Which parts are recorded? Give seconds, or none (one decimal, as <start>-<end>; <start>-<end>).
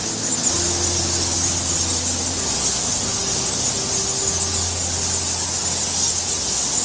0.0-6.8